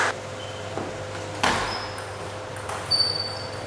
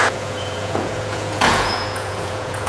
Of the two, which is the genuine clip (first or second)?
first